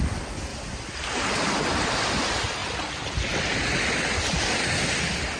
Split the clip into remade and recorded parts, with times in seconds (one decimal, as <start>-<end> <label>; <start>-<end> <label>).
0.0-0.5 recorded; 0.5-1.9 remade; 1.9-5.4 recorded